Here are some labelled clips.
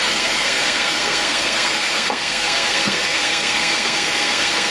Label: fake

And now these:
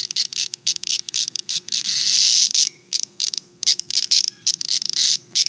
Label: fake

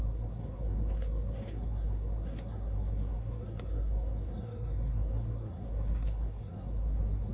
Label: fake